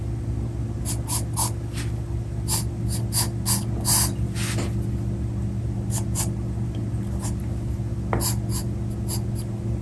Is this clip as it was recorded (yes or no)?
yes